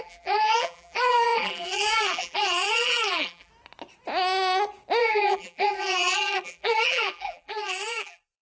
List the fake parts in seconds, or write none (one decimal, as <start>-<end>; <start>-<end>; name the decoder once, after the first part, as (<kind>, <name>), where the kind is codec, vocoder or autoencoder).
0.0-3.5 (vocoder, BigVGAN v2); 5.0-8.4